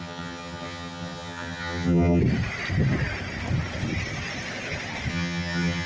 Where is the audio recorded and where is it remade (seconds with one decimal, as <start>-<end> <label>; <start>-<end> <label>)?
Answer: 0.0-2.2 remade; 2.2-5.1 recorded; 5.1-5.9 remade